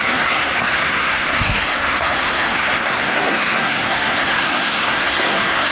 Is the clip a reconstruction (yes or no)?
yes